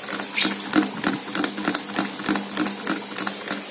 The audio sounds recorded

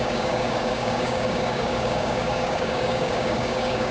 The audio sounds remade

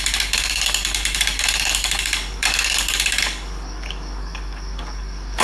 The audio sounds remade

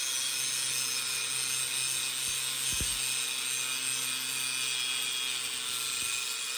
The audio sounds recorded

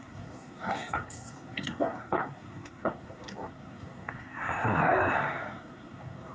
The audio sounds remade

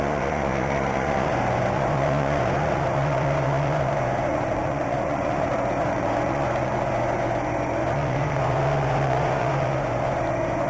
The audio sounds remade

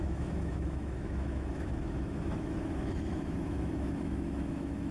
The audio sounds remade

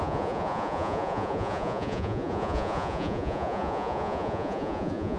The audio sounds remade